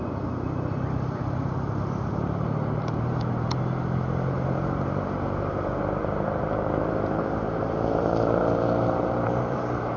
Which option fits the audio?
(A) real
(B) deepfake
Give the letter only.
B